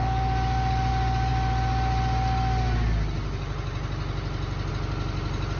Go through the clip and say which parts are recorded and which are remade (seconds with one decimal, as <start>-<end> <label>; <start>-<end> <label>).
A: 0.0-5.6 recorded